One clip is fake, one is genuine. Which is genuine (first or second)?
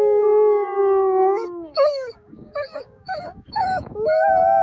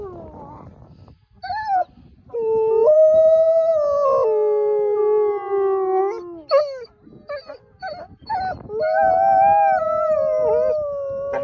second